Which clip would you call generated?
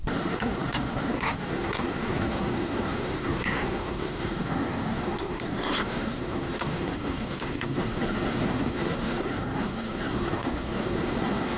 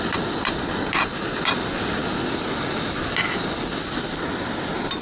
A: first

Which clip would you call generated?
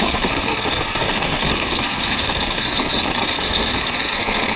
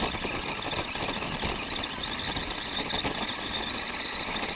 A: first